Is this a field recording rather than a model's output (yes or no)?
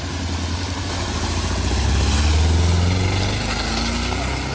yes